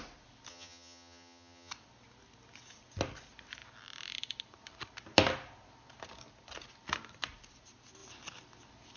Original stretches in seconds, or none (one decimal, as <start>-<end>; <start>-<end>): 0.0-0.5; 1.7-9.0